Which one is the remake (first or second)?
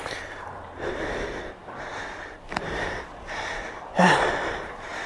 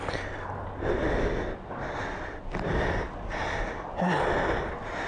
first